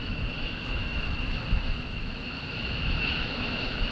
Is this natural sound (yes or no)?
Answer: no